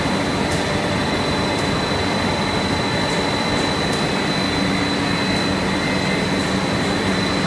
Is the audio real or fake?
real